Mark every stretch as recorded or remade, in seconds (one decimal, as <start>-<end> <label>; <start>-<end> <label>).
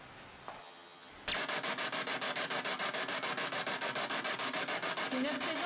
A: 0.0-0.6 recorded; 0.6-1.1 remade; 1.1-5.7 recorded